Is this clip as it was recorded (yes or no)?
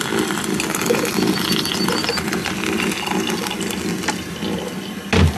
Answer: yes